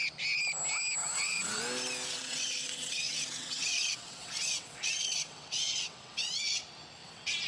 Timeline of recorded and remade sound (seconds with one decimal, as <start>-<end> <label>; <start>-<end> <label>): 0.0-1.0 recorded; 1.0-1.6 remade; 1.6-2.1 recorded; 2.1-6.6 remade; 6.6-7.0 recorded; 7.0-7.5 remade